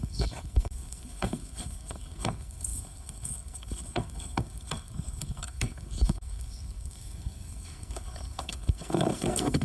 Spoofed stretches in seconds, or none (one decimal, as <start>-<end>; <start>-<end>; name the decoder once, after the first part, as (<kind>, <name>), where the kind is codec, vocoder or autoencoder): 0.0-9.6 (codec, SNAC)